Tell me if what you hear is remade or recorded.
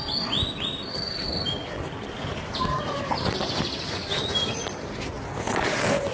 recorded